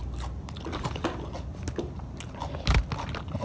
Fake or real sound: real